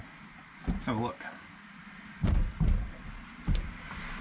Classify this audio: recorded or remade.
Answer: recorded